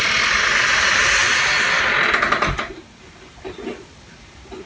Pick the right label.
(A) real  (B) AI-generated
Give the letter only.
A